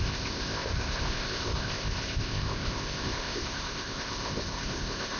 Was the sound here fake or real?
fake